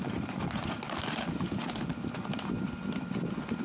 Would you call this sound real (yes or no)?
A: yes